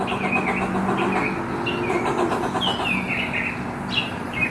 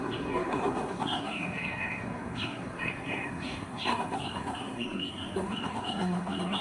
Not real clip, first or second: second